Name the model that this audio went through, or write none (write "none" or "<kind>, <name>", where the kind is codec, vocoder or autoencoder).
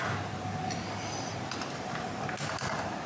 none